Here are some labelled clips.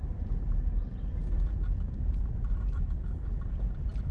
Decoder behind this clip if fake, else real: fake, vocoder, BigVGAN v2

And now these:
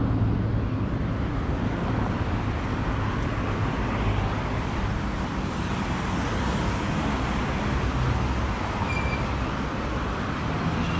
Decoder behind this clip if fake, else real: real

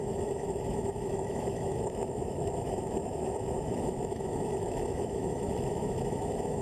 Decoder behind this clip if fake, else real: fake, autoencoder, DAC-VAE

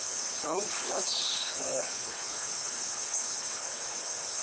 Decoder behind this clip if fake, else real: fake, codec, HILCodec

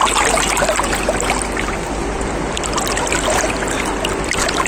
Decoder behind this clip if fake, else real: real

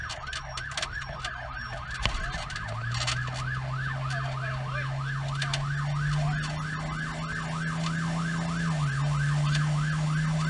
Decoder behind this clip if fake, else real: real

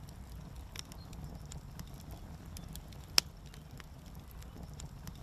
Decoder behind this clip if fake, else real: real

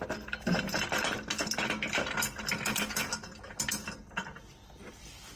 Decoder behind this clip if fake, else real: real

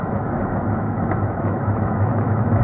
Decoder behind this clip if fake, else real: fake, autoencoder, DAC-VAE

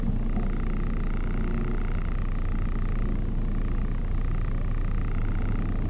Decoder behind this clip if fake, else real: real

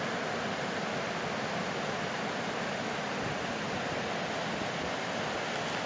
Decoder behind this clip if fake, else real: real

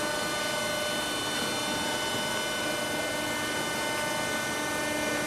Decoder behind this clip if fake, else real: real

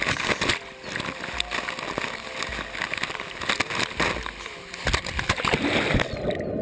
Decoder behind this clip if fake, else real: real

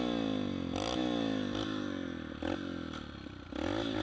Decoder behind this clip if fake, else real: real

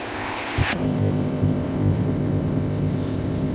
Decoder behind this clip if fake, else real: fake, codec, ZipCodec